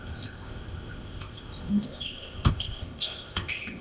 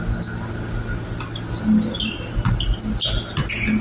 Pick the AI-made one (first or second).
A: first